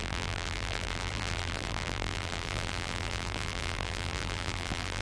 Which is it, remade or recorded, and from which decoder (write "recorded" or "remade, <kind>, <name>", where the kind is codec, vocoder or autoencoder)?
remade, vocoder, BigVGAN v2